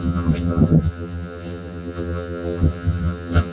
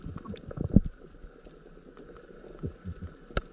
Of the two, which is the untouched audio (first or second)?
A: second